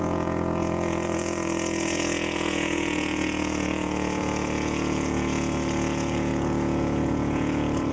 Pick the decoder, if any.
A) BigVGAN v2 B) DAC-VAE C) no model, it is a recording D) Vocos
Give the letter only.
D